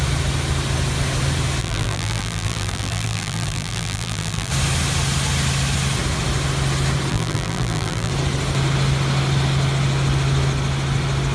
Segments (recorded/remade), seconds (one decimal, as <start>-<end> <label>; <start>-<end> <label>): 0.0-1.6 recorded; 1.6-4.5 remade; 4.5-7.1 recorded; 7.1-8.1 remade; 8.1-11.3 recorded